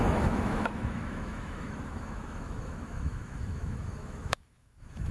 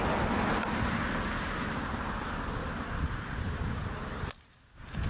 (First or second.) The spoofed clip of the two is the first